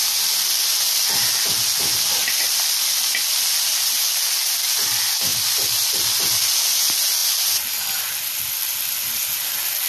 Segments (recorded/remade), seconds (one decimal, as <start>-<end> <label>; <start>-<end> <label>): 0.0-9.9 recorded